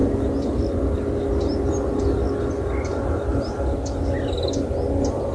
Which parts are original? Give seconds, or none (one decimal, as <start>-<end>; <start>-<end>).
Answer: 0.0-5.3